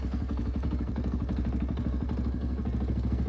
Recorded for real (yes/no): no